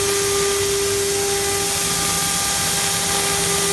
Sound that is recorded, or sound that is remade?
recorded